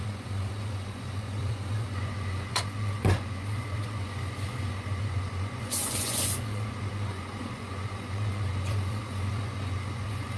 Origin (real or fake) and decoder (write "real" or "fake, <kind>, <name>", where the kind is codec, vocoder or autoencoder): fake, vocoder, Vocos